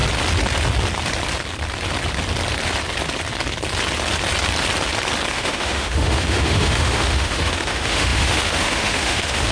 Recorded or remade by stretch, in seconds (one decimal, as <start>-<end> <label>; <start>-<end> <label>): 0.0-5.3 recorded; 5.3-9.5 remade